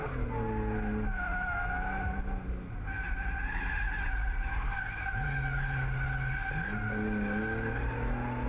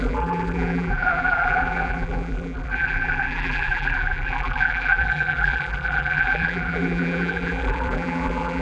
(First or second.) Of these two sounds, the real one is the first